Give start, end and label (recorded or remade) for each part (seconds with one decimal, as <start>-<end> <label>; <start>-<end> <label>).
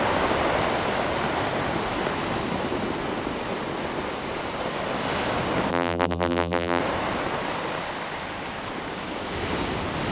0.0-5.7 recorded; 5.7-6.8 remade; 6.8-10.1 recorded